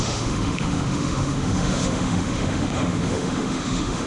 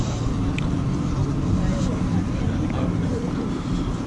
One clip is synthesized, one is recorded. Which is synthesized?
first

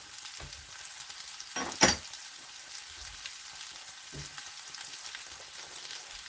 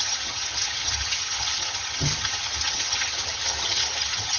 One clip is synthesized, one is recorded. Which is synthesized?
second